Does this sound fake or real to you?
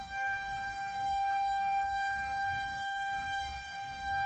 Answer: fake